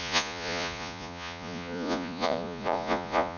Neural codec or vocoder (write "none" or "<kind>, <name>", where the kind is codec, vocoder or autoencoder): vocoder, Vocos